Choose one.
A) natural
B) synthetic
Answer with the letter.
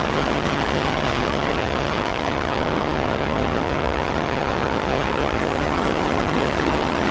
B